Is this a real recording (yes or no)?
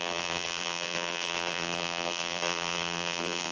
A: no